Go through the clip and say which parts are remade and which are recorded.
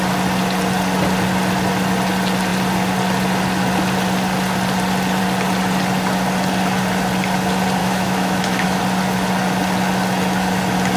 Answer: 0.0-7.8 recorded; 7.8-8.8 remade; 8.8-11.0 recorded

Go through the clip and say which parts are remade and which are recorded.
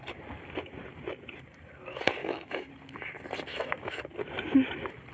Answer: 0.0-2.2 recorded; 2.2-2.7 remade; 2.7-3.5 recorded; 3.5-4.0 remade; 4.0-5.1 recorded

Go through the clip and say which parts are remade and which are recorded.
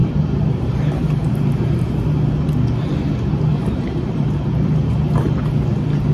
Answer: 0.0-2.0 remade; 2.0-3.5 recorded; 3.5-4.9 remade; 4.9-6.1 recorded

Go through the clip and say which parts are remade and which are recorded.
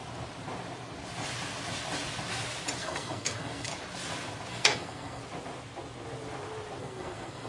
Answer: 0.0-2.8 recorded; 2.8-3.7 remade; 3.7-4.5 recorded; 4.5-5.2 remade; 5.2-6.8 recorded; 6.8-7.5 remade